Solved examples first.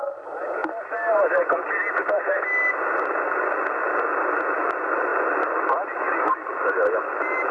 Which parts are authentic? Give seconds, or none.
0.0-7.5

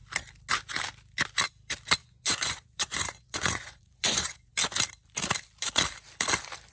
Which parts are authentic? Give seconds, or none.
0.0-2.0; 4.5-6.7

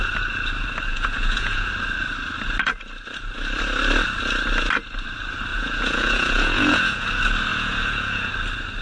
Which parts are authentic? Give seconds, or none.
0.0-0.9; 1.7-5.5; 7.1-7.5; 8.3-8.8

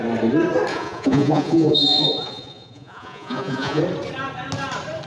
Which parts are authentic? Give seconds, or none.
0.0-0.7; 3.8-5.1

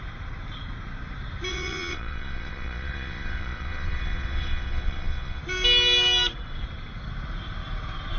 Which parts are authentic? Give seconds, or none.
0.0-1.5; 5.4-8.2

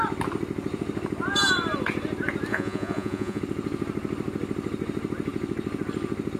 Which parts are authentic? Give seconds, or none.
0.0-2.5; 3.4-6.4

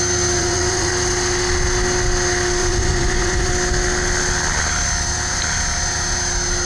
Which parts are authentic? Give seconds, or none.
0.0-0.4; 0.9-2.6; 3.5-6.6

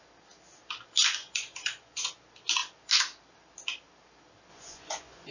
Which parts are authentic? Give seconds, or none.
0.0-1.2; 2.1-4.5